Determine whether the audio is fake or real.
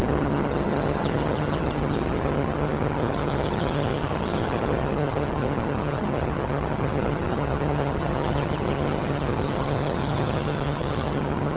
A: fake